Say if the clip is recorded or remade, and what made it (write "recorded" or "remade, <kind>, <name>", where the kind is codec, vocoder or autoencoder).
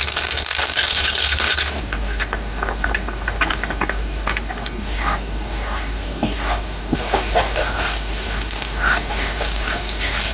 remade, codec, DAC